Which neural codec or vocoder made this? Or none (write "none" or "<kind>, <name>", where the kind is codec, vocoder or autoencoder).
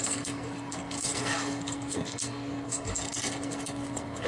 codec, SNAC